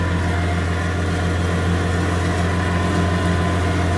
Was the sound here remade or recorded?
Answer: recorded